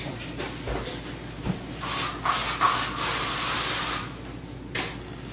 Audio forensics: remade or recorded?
recorded